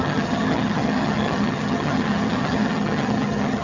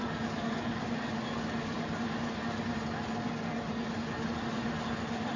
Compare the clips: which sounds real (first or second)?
second